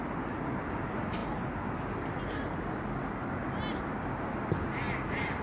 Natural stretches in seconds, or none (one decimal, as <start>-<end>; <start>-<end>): 0.0-5.4